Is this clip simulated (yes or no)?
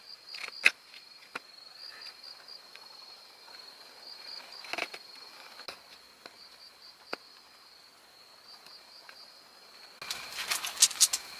no